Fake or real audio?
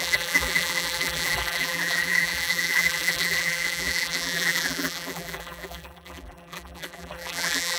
fake